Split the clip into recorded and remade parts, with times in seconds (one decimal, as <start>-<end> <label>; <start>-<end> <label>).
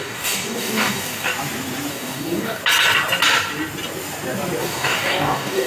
0.0-1.3 remade; 1.3-1.9 recorded; 1.9-2.6 remade; 2.6-4.6 recorded; 4.6-5.7 remade